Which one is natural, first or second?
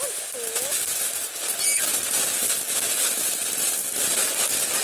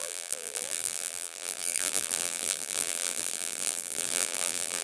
first